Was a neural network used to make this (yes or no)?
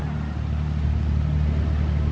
no